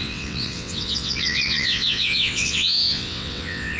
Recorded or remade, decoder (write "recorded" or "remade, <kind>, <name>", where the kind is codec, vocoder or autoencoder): remade, vocoder, WaveNeXt